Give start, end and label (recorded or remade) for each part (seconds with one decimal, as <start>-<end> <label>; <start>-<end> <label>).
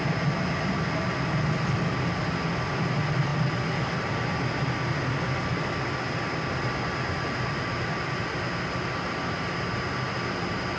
0.0-10.8 recorded